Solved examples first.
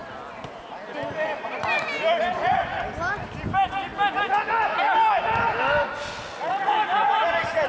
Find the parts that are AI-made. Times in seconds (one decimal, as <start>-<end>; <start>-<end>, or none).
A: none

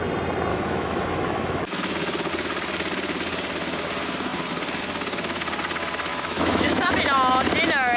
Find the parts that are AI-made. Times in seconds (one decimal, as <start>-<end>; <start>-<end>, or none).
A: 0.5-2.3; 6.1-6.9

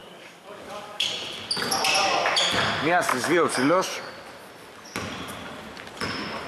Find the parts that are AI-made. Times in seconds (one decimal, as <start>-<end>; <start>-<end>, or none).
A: 0.0-1.1; 3.1-4.1

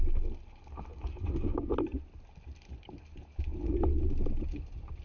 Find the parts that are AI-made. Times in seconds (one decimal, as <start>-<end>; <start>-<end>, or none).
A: none

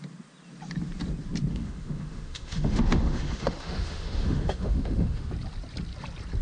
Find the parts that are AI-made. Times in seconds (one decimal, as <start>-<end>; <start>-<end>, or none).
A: 1.5-5.3

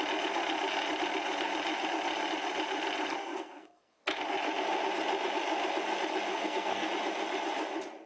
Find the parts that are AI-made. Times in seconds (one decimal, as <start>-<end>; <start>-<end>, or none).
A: 3.2-4.0; 6.3-6.9

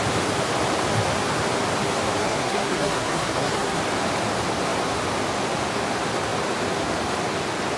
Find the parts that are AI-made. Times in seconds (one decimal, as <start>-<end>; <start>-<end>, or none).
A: 2.2-3.8